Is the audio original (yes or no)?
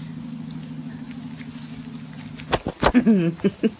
yes